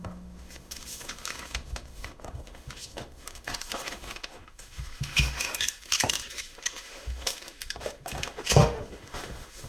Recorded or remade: remade